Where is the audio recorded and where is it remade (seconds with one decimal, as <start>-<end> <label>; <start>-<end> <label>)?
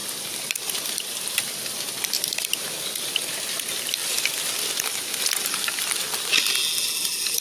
0.0-3.1 remade; 3.1-7.4 recorded